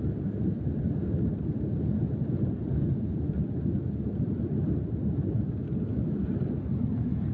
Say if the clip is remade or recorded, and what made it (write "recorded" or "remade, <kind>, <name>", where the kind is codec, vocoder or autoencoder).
recorded